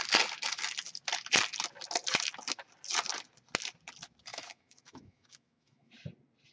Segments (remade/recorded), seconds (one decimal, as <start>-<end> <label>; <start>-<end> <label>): 0.0-4.3 recorded; 4.3-5.9 remade; 5.9-6.5 recorded